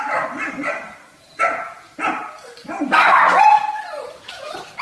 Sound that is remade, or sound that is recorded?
recorded